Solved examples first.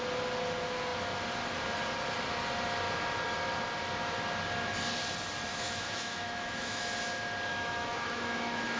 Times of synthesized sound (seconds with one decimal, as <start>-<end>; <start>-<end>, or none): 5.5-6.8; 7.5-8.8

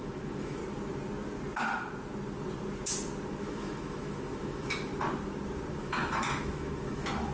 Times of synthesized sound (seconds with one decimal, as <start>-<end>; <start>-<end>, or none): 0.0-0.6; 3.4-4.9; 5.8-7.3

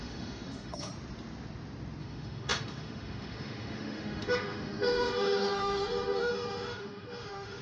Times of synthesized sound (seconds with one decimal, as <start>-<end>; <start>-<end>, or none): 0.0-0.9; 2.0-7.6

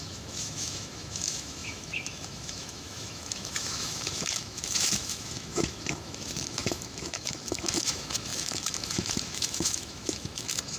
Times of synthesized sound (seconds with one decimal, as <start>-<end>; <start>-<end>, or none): 0.0-10.8

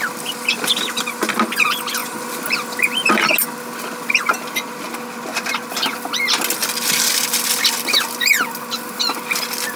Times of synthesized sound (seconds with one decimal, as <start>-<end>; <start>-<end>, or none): none

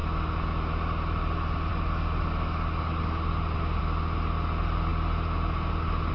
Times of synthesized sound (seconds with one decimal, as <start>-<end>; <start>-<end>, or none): none

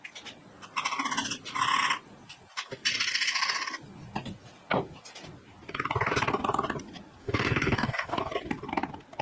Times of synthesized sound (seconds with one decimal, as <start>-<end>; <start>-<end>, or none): 7.2-8.2

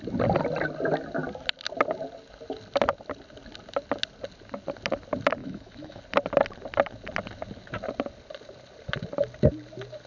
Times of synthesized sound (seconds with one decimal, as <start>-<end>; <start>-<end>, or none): 5.4-6.0